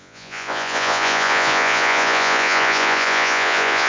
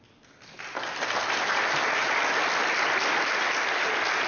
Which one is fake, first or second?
first